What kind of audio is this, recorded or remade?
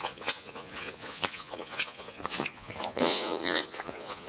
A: remade